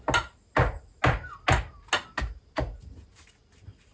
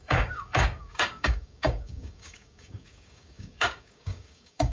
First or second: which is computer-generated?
second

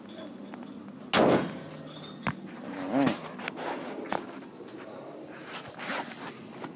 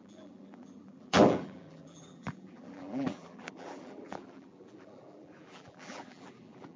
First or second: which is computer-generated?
second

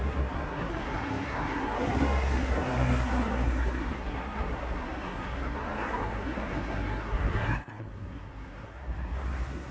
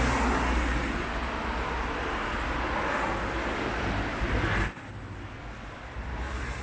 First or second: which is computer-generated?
first